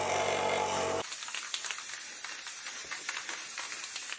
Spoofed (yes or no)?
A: no